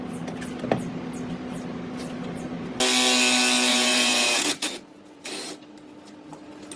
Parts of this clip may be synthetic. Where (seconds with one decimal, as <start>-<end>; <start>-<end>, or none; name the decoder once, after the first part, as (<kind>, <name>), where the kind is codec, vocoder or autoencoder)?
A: 3.7-5.2 (vocoder, Vocos)